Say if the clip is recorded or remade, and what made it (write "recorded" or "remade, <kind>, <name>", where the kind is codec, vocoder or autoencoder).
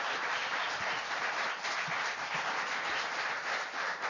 recorded